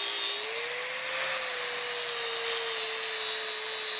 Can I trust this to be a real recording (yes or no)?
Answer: yes